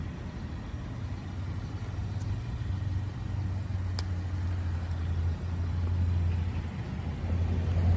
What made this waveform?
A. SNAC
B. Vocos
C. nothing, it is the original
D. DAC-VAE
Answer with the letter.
C